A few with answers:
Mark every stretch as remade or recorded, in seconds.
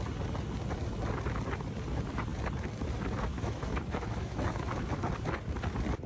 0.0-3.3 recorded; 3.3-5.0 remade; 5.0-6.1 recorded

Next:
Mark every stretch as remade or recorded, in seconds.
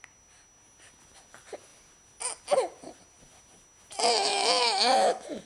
0.0-4.3 recorded; 4.3-5.4 remade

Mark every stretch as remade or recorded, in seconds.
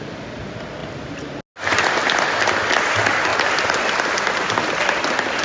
0.0-5.4 recorded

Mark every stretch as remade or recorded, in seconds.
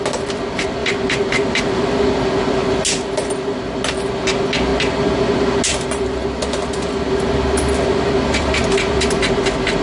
0.0-9.8 recorded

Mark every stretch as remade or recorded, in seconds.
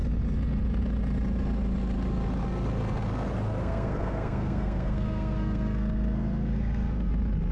0.0-3.6 recorded; 3.6-7.1 remade; 7.1-7.5 recorded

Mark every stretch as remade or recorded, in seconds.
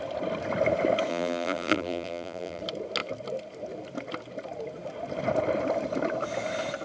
0.0-1.1 recorded; 1.1-2.6 remade; 2.6-6.8 recorded